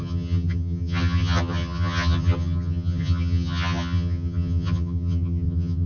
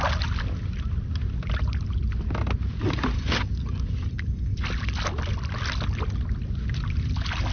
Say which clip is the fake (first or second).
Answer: first